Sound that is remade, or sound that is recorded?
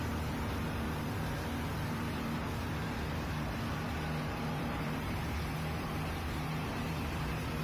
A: remade